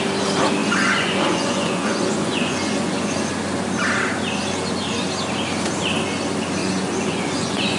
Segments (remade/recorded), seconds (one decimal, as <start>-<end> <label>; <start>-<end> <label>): 0.0-0.6 recorded; 0.6-3.3 remade; 3.3-6.6 recorded; 6.6-7.8 remade